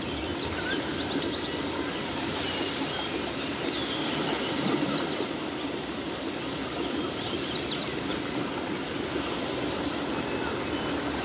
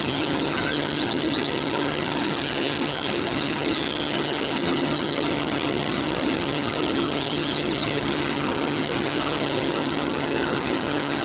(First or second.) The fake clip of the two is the second